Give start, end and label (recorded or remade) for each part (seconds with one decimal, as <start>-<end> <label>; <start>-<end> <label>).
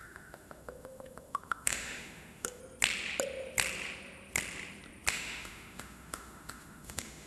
0.0-2.6 remade; 2.6-5.1 recorded; 5.1-7.3 remade